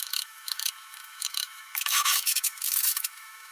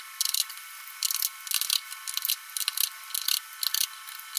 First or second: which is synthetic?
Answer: first